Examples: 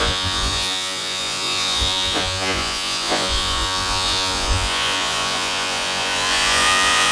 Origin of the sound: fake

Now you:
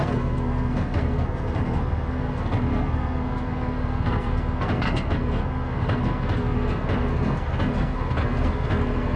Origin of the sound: fake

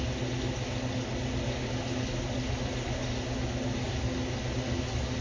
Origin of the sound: real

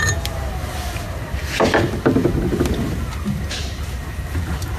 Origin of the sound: real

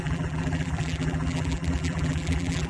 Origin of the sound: fake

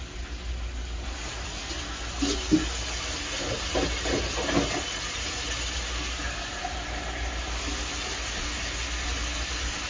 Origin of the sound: real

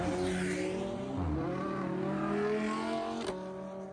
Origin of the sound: real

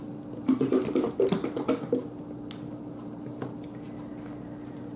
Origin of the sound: real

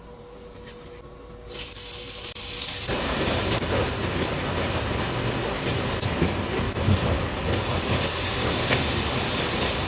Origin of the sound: real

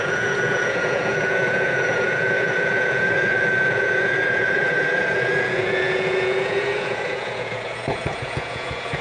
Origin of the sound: fake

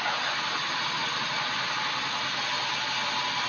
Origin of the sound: real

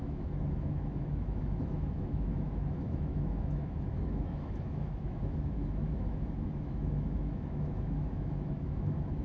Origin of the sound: fake